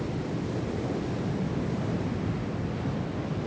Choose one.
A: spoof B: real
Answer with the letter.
B